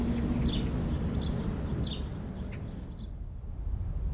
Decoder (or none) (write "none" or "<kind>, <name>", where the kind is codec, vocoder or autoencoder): none